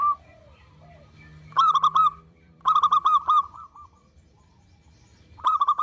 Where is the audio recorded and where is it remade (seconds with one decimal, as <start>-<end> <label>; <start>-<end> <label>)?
0.0-2.0 recorded; 2.0-5.8 remade

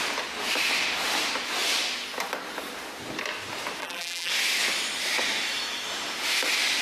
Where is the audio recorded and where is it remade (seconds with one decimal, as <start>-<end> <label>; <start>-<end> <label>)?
0.0-3.8 recorded; 3.8-4.3 remade; 4.3-6.8 recorded

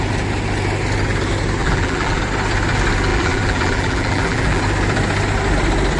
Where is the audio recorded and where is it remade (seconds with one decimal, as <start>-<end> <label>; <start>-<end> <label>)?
0.0-1.6 recorded; 1.6-2.2 remade; 2.2-3.1 recorded; 3.1-4.6 remade; 4.6-6.0 recorded

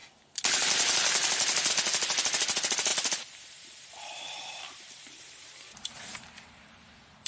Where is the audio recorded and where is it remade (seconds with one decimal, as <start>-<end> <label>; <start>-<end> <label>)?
0.0-2.9 recorded; 2.9-7.3 remade

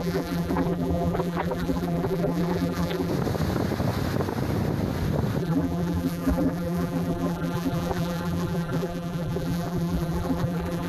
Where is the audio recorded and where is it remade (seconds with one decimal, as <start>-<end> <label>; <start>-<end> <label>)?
0.0-3.1 remade; 3.1-5.4 recorded; 5.4-10.9 remade

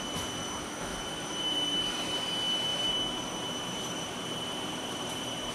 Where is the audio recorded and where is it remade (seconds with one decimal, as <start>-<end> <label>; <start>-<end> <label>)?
0.0-0.9 recorded; 0.9-2.2 remade; 2.2-2.7 recorded; 2.7-5.5 remade

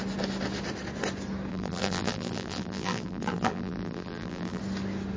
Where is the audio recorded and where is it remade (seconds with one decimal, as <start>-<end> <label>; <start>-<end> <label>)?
0.0-1.5 recorded; 1.5-4.6 remade; 4.6-5.2 recorded